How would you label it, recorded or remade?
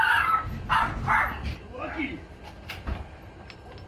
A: recorded